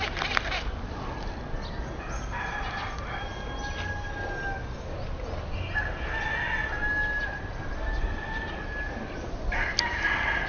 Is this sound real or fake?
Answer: real